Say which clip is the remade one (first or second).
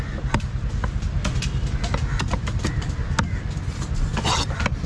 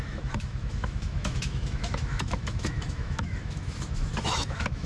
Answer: second